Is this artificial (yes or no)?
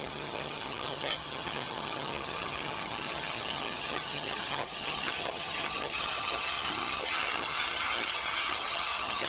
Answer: yes